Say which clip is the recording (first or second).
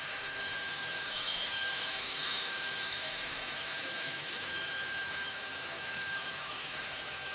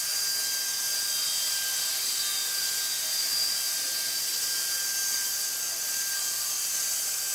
second